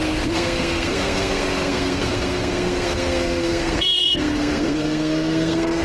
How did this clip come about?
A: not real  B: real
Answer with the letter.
A